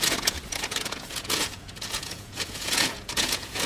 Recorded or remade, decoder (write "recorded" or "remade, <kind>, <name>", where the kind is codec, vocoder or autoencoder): remade, vocoder, Vocos